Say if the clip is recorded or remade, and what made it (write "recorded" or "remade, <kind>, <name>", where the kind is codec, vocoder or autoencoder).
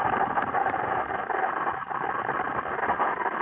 recorded